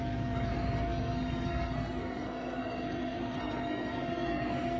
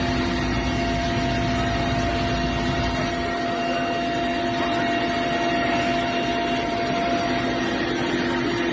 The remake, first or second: first